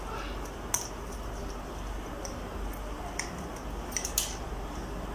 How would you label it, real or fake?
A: real